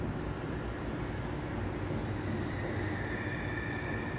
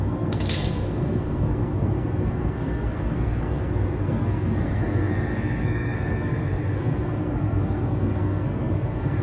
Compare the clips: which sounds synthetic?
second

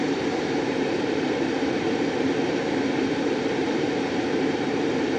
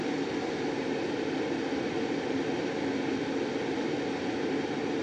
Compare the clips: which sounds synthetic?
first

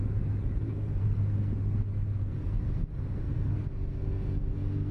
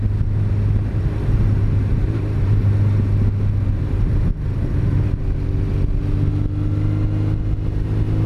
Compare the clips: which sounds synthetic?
first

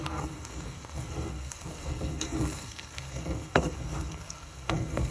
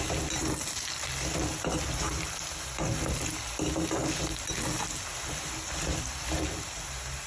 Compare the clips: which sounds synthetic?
first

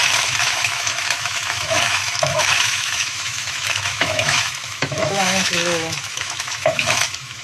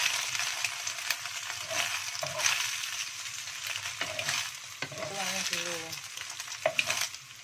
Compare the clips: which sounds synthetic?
first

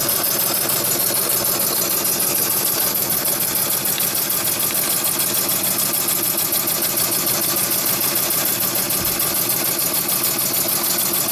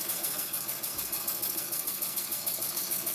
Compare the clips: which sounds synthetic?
second